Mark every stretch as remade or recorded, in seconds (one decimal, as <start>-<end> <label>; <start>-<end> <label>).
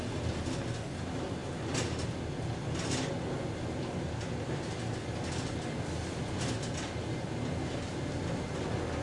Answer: 0.0-9.0 recorded